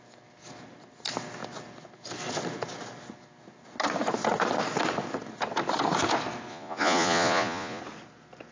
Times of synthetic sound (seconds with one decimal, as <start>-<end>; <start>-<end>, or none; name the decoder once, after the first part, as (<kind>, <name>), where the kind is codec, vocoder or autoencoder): 6.5-7.8 (vocoder, Vocos)